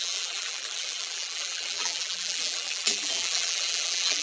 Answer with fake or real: fake